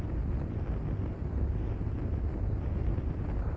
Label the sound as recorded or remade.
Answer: recorded